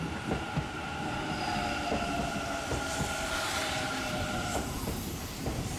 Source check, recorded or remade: recorded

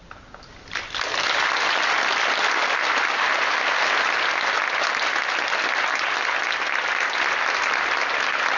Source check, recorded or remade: recorded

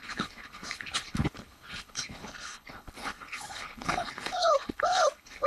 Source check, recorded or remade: remade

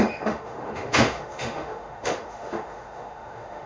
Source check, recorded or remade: remade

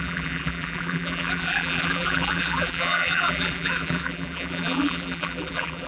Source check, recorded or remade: remade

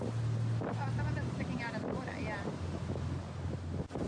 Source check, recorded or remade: recorded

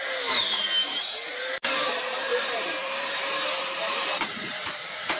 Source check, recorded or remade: remade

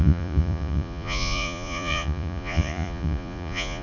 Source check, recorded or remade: remade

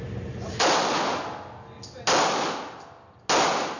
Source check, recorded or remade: recorded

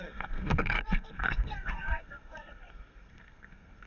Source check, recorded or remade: remade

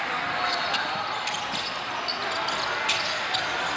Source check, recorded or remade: recorded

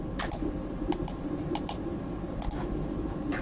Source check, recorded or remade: recorded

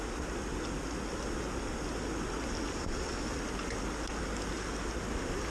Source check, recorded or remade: recorded